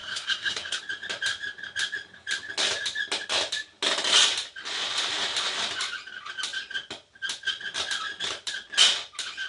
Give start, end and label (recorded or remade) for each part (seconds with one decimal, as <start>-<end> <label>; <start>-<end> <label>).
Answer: 0.0-0.8 remade; 0.8-9.5 recorded